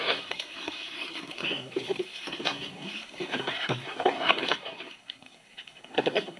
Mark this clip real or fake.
fake